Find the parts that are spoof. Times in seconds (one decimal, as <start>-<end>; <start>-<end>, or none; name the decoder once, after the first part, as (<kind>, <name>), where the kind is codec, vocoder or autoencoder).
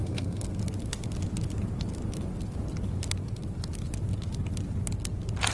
0.0-0.6 (codec, SNAC)